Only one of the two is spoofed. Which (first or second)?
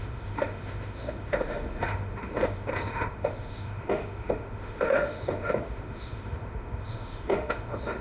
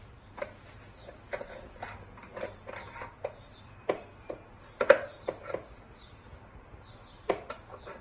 first